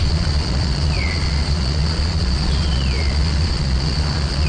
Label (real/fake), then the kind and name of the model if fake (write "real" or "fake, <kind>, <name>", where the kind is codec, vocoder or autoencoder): fake, vocoder, Vocos